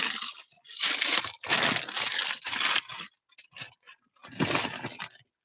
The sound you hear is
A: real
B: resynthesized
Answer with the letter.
A